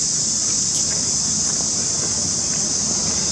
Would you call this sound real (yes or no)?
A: yes